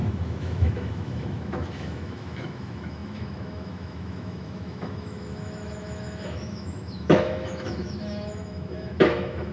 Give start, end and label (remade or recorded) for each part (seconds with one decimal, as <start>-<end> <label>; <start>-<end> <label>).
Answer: 0.0-9.5 remade